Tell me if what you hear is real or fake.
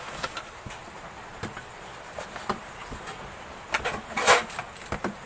real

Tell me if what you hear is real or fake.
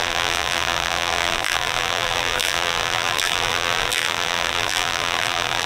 fake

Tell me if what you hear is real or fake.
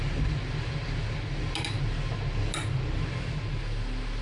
real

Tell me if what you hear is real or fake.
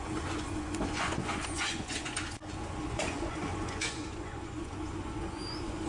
fake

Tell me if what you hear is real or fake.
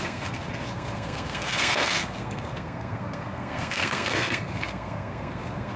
fake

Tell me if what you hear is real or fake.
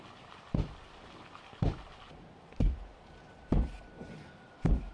real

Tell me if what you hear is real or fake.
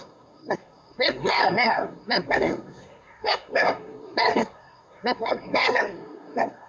fake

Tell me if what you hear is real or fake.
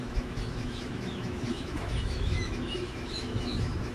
fake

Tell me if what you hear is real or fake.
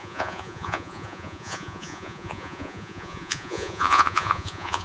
fake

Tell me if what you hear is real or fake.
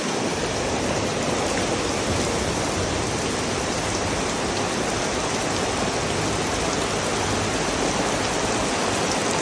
real